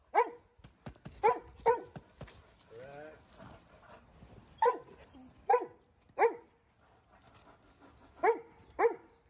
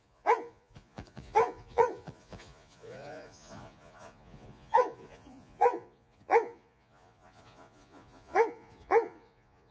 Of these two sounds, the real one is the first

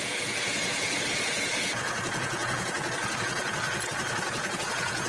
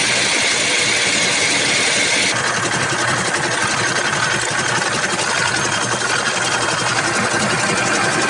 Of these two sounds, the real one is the second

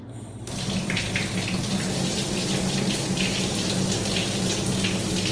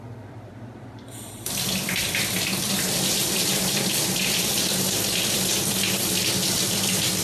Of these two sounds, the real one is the first